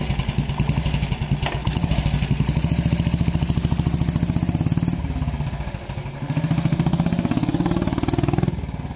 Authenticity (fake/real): real